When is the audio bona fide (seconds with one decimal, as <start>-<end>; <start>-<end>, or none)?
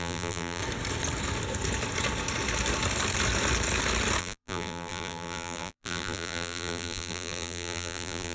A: 0.6-4.2